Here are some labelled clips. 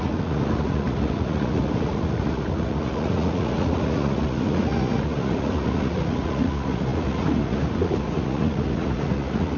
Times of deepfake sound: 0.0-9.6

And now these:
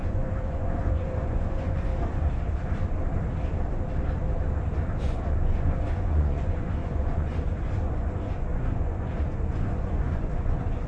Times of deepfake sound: 0.0-1.9; 5.0-10.9

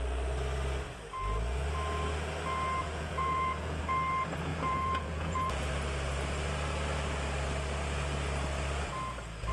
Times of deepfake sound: 2.8-3.8; 4.5-5.7